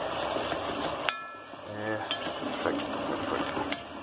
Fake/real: real